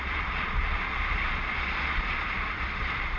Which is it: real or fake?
fake